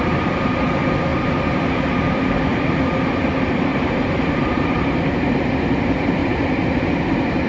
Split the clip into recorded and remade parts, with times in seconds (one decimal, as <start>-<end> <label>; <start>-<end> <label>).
0.0-1.1 recorded; 1.1-1.8 remade; 1.8-3.7 recorded; 3.7-5.5 remade; 5.5-6.2 recorded; 6.2-6.9 remade; 6.9-7.5 recorded